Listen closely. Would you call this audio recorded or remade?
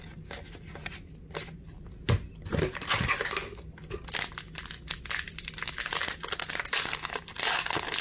recorded